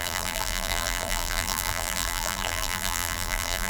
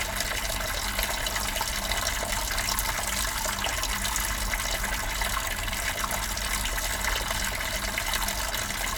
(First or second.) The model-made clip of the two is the first